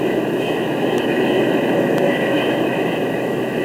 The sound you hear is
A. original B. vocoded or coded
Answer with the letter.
B